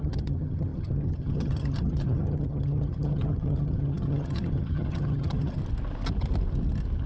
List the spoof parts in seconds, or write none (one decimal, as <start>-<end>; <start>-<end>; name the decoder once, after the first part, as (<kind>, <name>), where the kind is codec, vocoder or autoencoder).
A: 0.0-5.6 (vocoder, HiFi-GAN)